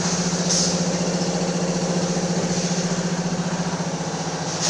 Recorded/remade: recorded